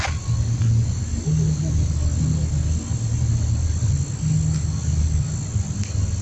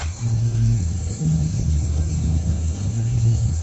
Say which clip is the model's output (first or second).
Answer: second